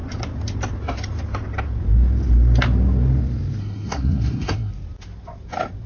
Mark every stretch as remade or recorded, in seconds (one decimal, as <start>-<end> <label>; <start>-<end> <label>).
0.0-3.6 recorded; 3.6-4.7 remade; 4.7-5.9 recorded